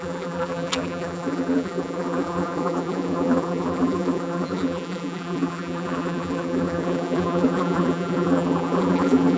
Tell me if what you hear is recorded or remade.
remade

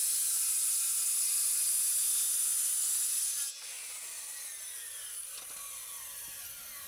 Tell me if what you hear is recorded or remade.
recorded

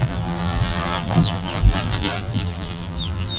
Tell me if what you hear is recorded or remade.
remade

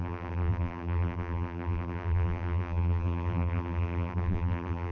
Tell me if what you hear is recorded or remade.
remade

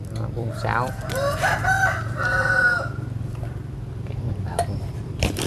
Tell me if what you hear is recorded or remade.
remade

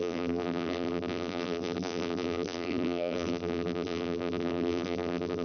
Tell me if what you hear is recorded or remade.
remade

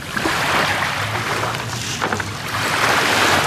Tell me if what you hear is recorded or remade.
remade